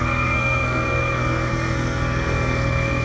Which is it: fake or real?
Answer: fake